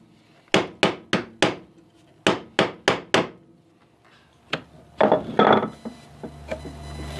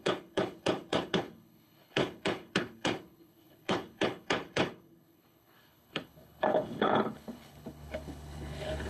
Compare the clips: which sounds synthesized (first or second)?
second